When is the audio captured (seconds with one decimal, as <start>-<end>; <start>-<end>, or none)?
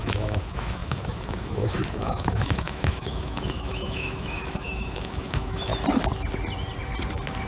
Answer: 5.7-7.5